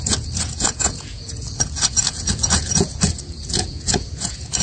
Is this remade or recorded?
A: remade